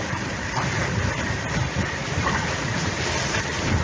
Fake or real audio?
fake